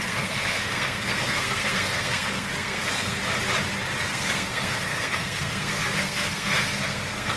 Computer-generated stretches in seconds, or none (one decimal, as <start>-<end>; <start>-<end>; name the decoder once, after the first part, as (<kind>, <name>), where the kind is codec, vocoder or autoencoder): 0.0-3.2 (codec, SNAC); 4.0-7.4